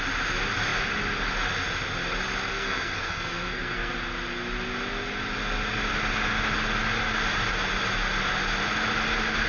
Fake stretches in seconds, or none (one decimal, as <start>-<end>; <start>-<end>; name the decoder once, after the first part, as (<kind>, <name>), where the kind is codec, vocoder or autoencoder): 2.5-3.9 (codec, SNAC)